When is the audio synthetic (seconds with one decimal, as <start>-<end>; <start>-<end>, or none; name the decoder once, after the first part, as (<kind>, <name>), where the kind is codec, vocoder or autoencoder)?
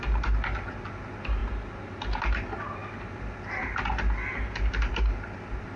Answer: none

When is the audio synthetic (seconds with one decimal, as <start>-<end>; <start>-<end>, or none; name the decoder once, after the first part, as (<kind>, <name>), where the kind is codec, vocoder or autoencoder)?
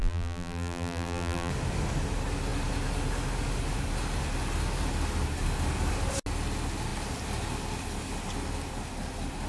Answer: 0.0-1.5 (vocoder, BigVGAN v2)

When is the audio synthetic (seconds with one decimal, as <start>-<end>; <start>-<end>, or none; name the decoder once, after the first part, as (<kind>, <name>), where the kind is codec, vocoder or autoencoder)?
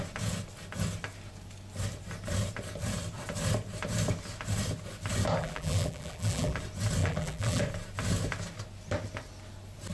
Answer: 5.4-6.6 (vocoder, BigVGAN v2); 7.0-7.6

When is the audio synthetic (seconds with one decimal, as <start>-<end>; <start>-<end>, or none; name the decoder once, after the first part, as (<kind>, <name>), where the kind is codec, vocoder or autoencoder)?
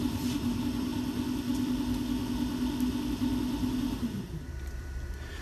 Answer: 0.0-0.9 (vocoder, BigVGAN v2); 3.8-5.4